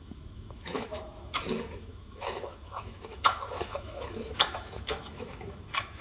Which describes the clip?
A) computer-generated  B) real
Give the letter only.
A